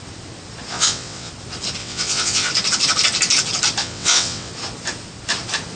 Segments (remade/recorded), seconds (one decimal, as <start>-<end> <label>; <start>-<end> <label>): 0.0-0.7 recorded; 0.7-1.3 remade; 1.3-1.8 recorded; 1.8-2.5 remade; 2.5-3.8 recorded; 3.8-4.5 remade; 4.5-5.8 recorded